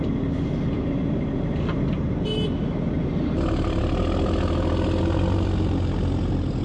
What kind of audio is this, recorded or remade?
recorded